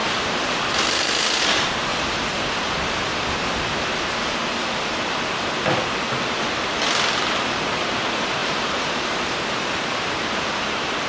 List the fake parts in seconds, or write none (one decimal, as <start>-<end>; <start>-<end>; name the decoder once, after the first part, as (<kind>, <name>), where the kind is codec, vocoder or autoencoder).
0.0-1.5 (vocoder, BigVGAN v2); 1.9-4.6; 8.4-9.8